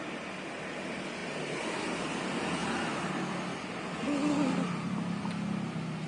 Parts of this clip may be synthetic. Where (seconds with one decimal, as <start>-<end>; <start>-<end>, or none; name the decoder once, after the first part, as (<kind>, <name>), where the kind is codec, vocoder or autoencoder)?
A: none